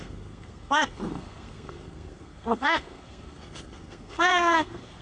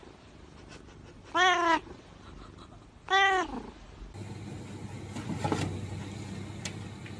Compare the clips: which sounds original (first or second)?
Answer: second